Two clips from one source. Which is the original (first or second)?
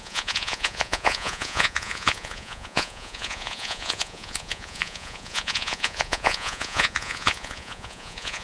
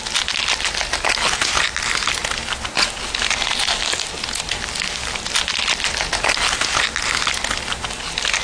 second